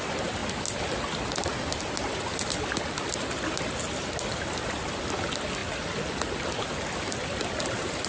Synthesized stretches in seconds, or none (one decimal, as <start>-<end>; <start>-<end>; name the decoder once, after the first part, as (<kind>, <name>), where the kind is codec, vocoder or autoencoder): none